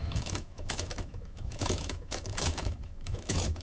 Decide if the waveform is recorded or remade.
remade